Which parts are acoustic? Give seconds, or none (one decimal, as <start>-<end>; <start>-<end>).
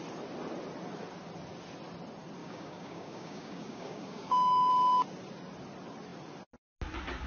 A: 0.0-2.4; 4.7-7.3